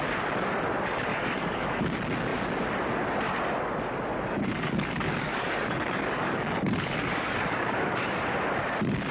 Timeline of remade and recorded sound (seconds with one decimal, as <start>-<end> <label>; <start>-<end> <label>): 0.0-1.1 recorded; 1.1-1.9 remade; 1.9-4.1 recorded; 4.1-8.2 remade; 8.2-9.1 recorded